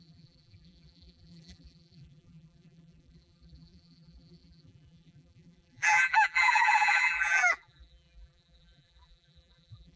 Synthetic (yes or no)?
yes